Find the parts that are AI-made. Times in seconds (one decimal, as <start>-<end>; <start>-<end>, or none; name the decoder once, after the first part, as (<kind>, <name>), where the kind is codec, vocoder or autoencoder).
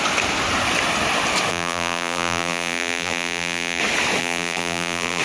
1.5-3.8 (vocoder, BigVGAN v2); 4.2-5.2